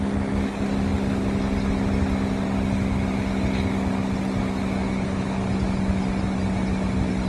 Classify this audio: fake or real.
real